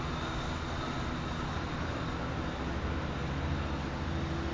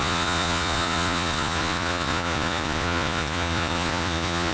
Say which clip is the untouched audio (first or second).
first